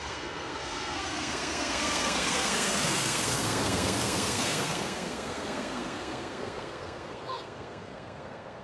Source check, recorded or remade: remade